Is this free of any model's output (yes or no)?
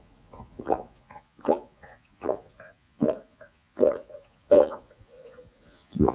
no